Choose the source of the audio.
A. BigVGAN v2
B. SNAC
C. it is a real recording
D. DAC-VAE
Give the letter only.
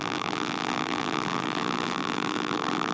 A